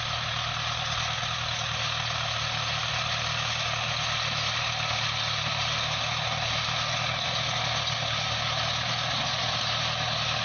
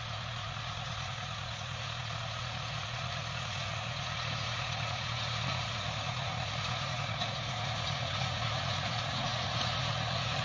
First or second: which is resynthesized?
second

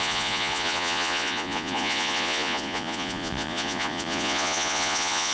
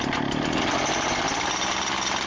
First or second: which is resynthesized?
first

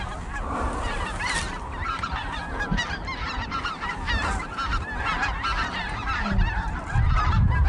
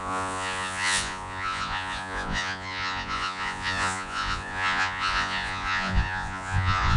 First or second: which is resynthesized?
second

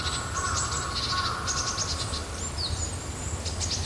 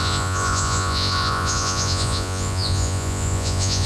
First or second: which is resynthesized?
second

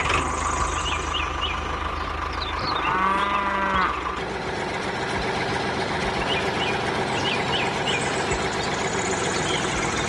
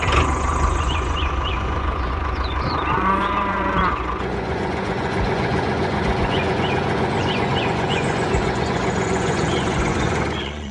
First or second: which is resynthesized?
second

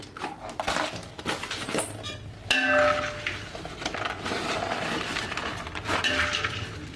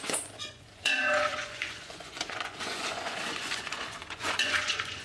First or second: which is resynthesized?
second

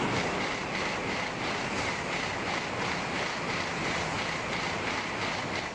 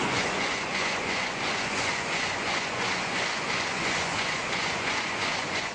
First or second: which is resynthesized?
second